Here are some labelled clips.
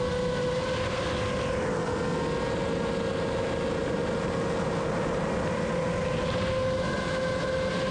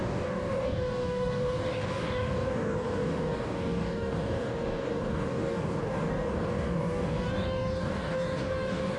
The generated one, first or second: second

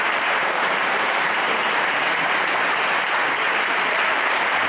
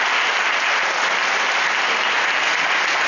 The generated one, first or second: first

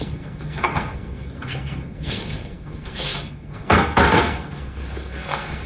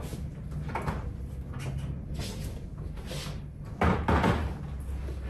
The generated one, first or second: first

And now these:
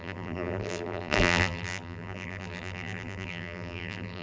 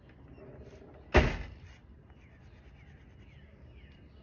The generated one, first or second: first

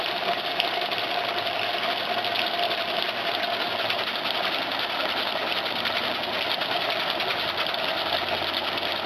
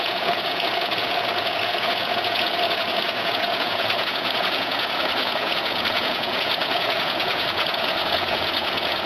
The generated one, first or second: second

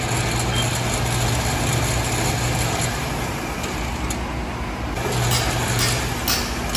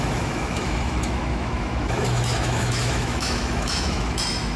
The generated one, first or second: second